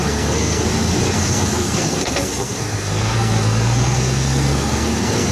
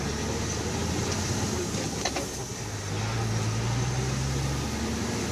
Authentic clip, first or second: second